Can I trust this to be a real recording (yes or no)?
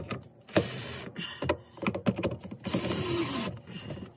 yes